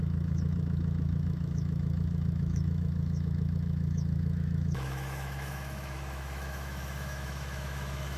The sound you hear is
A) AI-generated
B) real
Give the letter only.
A